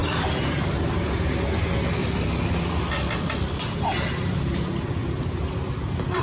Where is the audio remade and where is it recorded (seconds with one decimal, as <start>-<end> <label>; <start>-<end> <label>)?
0.0-1.1 remade; 1.1-2.0 recorded; 2.0-5.7 remade; 5.7-6.2 recorded